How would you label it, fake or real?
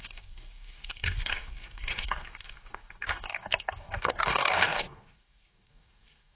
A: fake